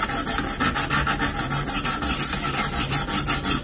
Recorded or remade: recorded